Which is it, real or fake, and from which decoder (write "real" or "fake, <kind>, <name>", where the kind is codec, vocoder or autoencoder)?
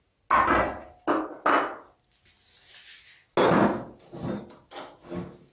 real